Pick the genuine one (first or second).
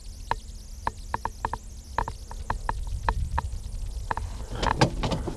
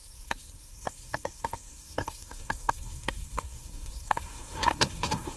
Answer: first